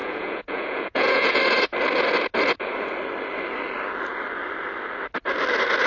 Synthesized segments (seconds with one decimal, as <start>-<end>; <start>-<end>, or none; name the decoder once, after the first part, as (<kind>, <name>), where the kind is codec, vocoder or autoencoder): 0.0-1.4 (vocoder, Vocos)